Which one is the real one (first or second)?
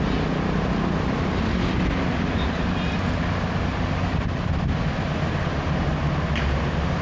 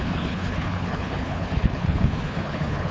first